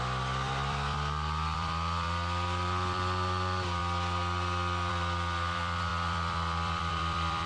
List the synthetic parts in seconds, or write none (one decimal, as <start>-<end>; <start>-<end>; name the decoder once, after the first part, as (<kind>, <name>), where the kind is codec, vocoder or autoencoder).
0.0-3.8 (vocoder, BigVGAN v2); 4.9-7.5